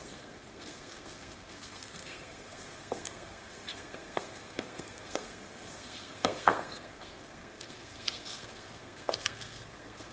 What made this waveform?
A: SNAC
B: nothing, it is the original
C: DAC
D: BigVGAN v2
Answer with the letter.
A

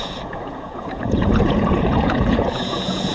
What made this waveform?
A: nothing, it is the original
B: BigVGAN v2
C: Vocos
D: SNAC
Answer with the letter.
C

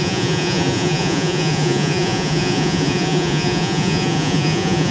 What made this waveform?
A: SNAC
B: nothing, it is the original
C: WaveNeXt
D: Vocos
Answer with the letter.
D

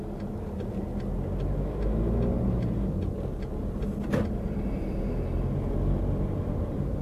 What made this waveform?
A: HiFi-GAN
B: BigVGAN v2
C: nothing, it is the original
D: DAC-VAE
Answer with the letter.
C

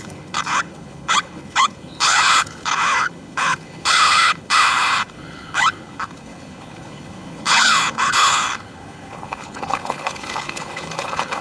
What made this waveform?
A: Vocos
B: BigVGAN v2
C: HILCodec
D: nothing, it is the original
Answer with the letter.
C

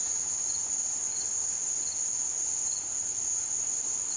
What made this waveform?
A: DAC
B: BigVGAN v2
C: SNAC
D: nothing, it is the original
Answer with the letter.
D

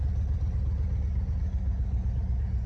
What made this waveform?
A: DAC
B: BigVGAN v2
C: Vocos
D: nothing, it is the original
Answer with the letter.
D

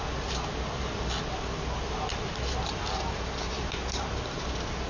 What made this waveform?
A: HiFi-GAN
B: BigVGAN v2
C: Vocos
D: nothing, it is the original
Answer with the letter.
D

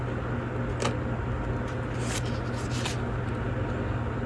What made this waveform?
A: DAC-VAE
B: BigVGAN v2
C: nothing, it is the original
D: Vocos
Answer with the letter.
C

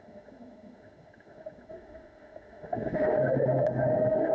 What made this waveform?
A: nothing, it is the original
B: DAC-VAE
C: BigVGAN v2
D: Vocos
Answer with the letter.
B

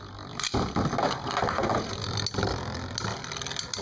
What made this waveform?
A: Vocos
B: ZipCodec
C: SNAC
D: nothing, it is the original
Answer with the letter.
D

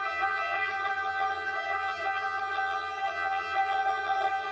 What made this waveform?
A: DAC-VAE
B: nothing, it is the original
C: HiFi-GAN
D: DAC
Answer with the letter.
C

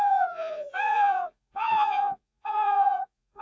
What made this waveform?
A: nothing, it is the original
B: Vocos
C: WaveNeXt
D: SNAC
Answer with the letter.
B